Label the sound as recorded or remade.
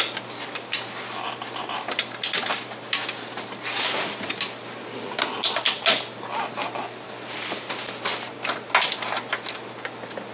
recorded